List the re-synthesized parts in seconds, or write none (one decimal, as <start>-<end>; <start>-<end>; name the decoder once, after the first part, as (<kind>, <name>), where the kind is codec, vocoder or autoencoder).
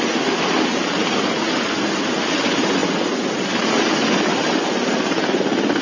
none